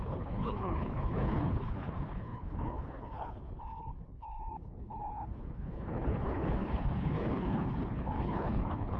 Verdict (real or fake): fake